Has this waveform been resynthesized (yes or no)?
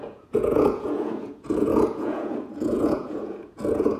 yes